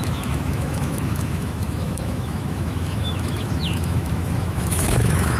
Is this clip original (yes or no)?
no